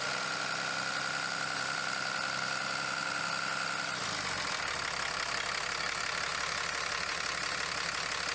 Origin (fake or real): real